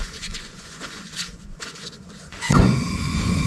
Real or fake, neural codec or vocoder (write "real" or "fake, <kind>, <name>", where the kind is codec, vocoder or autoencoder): fake, vocoder, Vocos